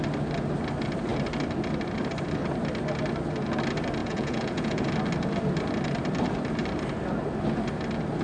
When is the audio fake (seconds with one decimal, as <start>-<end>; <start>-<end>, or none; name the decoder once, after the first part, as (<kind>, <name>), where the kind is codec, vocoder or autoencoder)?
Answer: 4.0-4.9 (vocoder, Vocos)